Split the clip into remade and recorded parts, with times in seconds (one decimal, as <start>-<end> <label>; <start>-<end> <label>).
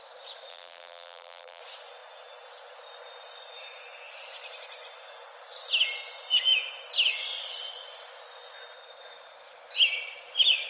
0.0-0.5 recorded; 0.5-1.6 remade; 1.6-10.7 recorded